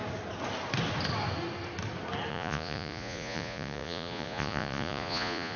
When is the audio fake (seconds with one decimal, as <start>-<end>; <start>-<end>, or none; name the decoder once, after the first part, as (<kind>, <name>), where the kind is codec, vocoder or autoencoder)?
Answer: 2.3-5.6 (vocoder, Vocos)